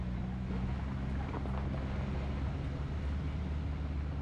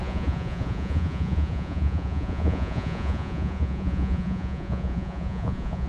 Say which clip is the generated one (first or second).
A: second